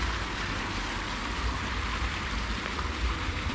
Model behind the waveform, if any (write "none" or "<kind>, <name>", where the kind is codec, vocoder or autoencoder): none